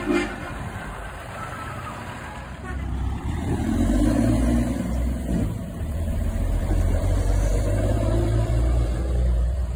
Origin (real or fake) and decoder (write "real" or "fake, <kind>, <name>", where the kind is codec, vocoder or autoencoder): fake, vocoder, BigVGAN v2